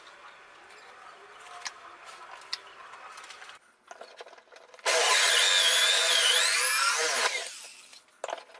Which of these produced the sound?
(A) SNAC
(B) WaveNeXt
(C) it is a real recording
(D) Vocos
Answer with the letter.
C